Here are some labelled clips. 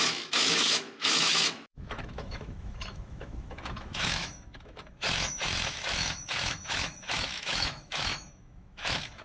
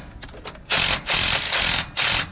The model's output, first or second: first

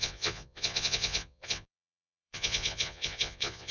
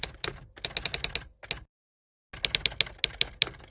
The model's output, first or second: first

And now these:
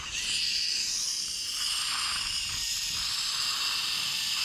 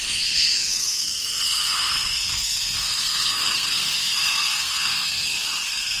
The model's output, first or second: second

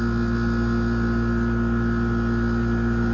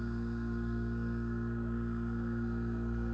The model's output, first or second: second